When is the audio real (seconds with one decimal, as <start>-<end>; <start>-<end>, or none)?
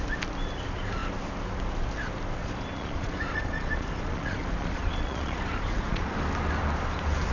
0.0-2.4; 6.1-7.3